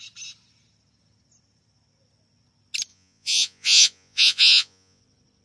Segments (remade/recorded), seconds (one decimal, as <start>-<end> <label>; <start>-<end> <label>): 0.0-2.9 recorded; 2.9-5.0 remade; 5.0-5.4 recorded